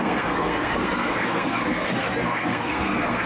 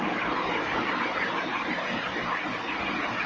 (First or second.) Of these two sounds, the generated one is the first